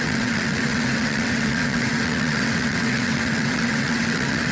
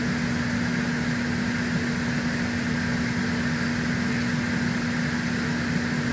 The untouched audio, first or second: second